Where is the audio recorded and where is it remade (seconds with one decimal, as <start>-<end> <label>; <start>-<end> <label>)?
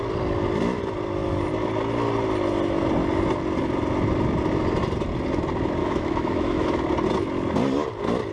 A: 0.0-5.8 recorded; 5.8-6.8 remade; 6.8-8.3 recorded